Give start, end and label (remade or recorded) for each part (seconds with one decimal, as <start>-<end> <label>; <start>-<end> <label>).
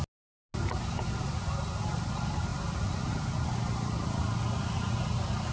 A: 0.0-5.5 recorded